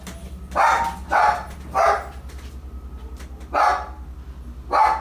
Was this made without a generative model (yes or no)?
yes